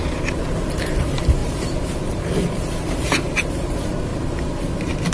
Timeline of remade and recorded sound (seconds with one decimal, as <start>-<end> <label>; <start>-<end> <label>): 0.0-0.8 recorded; 0.8-4.1 remade; 4.1-5.1 recorded